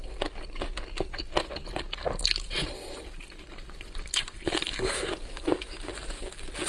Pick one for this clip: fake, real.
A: real